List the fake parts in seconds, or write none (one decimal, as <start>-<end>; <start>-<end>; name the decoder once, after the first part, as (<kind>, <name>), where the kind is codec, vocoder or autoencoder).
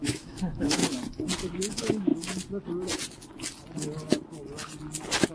0.0-0.8 (autoencoder, DAC-VAE); 1.7-2.1